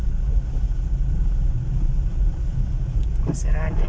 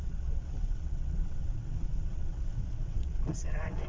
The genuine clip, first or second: first